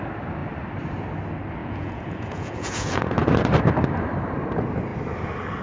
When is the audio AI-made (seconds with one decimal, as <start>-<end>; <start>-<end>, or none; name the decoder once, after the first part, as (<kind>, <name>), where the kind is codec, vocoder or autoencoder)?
1.6-3.0 (vocoder, Vocos)